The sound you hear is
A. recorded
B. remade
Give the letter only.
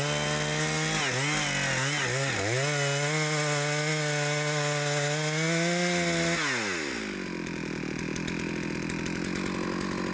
A